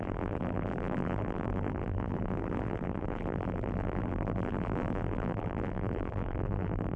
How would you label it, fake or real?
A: fake